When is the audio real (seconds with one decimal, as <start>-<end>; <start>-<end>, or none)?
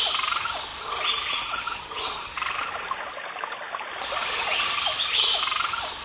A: 0.0-6.0